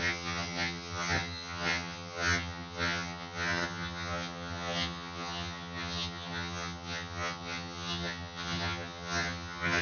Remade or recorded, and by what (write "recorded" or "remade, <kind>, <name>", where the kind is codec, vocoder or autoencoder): remade, vocoder, HiFi-GAN